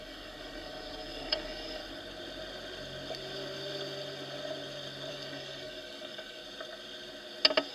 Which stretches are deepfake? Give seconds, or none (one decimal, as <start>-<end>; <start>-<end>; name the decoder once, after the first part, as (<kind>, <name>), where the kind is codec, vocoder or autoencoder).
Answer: 0.0-1.8 (codec, DAC); 5.1-6.4

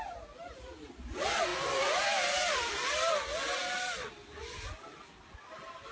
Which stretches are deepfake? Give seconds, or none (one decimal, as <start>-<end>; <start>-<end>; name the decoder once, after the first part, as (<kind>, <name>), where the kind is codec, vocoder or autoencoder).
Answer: none

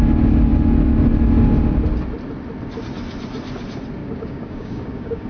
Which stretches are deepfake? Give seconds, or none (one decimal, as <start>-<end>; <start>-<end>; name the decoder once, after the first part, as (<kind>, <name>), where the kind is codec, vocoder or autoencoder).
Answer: 4.0-5.3 (codec, DAC)

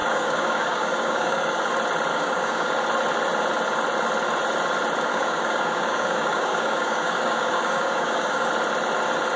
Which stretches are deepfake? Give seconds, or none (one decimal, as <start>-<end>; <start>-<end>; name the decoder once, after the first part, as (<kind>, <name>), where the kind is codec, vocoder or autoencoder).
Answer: 0.0-1.7 (codec, DAC); 2.1-2.7; 5.1-8.5

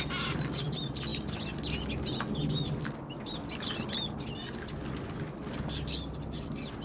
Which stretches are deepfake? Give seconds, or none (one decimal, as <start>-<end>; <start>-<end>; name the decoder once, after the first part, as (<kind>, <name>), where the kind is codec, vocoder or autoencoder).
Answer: none